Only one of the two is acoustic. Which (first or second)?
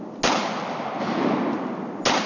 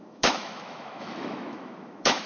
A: first